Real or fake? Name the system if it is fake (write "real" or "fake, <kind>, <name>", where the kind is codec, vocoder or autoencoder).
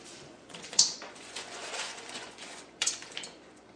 fake, vocoder, Vocos